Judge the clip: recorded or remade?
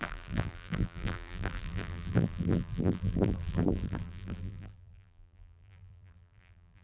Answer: remade